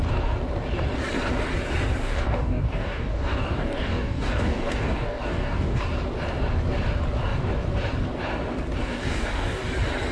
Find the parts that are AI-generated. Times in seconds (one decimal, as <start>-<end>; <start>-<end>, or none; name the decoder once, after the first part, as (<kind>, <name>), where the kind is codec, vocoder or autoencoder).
2.0-5.8 (codec, DAC); 8.8-9.7